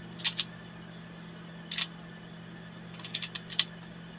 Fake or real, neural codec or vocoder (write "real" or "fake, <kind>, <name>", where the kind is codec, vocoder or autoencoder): real